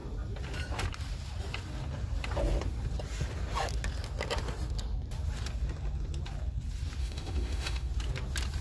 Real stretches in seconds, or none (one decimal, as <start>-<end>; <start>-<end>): 0.0-7.0; 7.9-8.6